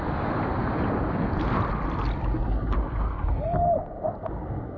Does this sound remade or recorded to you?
recorded